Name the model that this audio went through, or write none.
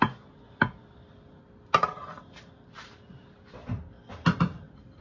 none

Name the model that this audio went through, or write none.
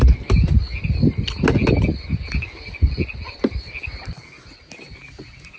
none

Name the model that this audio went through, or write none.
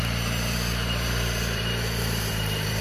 vocoder, BigVGAN v2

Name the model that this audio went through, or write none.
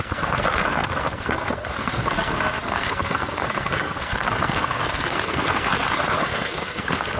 codec, SNAC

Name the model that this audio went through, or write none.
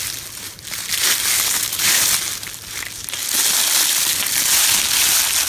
none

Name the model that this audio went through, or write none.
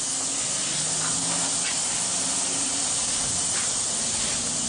none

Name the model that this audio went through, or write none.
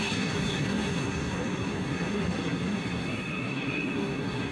codec, SNAC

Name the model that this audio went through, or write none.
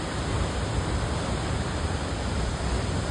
none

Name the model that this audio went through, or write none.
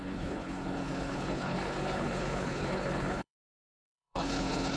codec, HILCodec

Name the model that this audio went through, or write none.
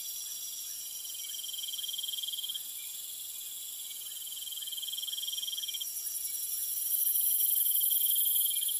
none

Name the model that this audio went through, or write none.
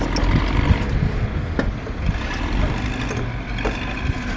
none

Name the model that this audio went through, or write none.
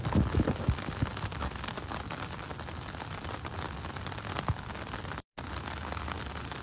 none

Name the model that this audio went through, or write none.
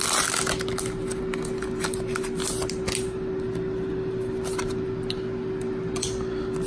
none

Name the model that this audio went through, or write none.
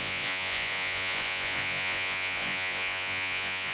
vocoder, Vocos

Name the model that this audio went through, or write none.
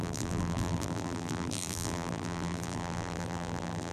vocoder, BigVGAN v2